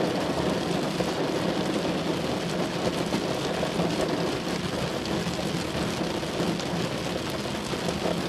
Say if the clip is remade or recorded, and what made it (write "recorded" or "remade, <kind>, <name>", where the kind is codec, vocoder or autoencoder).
recorded